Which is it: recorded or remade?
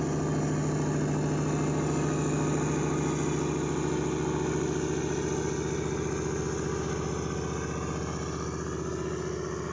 recorded